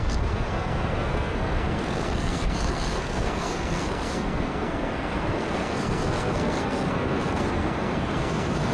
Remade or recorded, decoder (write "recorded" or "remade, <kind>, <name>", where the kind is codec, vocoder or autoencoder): remade, codec, SNAC